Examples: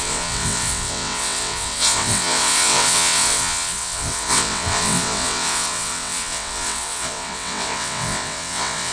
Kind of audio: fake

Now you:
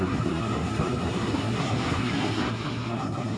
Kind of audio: fake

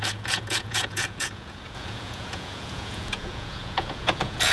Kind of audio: fake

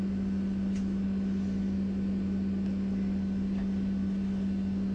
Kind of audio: real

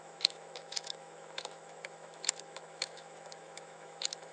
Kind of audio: fake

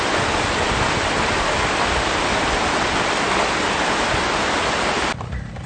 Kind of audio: real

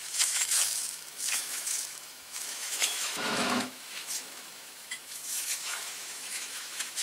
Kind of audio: fake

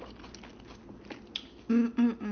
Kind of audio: real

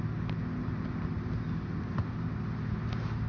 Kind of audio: real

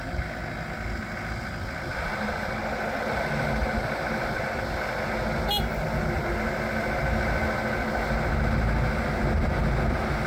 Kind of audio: real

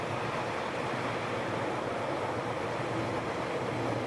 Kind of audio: real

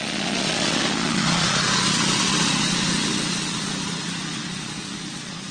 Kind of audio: fake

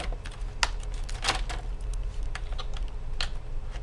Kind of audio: real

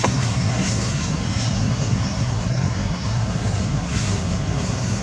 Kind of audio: fake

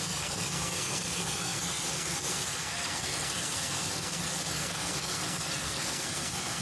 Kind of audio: fake